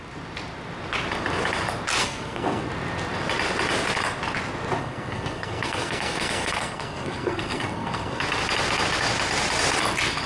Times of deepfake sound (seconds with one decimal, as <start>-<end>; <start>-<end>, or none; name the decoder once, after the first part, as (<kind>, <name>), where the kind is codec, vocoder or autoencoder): 2.0-2.7 (codec, SNAC); 4.8-8.2